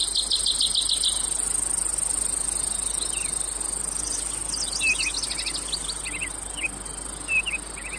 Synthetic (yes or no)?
no